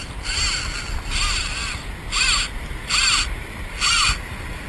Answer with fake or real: real